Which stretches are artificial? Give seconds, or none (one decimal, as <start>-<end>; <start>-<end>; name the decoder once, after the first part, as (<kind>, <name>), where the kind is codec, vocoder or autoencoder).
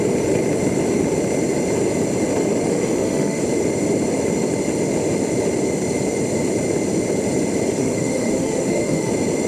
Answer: 2.6-3.4 (autoencoder, DAC-VAE); 7.8-9.1